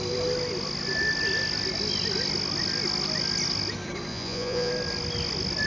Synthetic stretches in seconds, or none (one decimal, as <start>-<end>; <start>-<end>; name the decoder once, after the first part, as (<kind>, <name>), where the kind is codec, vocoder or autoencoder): 4.1-4.7 (vocoder, Vocos)